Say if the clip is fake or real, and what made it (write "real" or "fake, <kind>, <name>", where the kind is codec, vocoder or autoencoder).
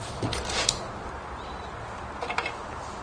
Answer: real